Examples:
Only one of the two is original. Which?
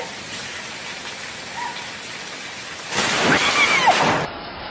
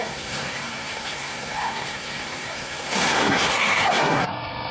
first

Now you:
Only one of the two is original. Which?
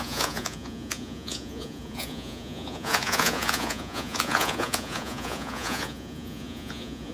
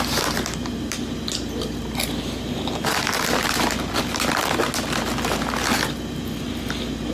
second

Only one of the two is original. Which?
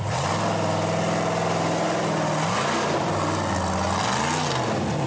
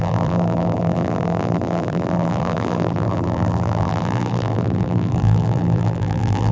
first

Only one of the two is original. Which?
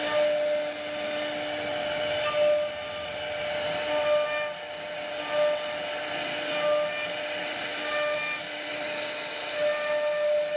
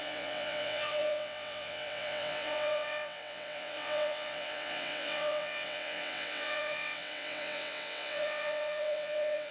first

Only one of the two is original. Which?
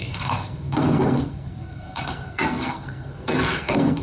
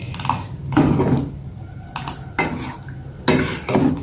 second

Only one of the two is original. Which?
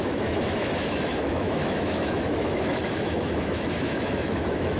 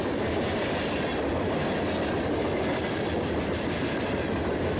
second